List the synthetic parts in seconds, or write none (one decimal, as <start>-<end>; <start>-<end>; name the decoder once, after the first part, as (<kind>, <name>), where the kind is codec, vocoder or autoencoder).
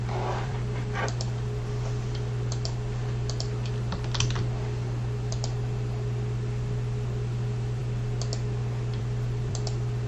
0.0-7.8 (vocoder, BigVGAN v2); 9.0-10.1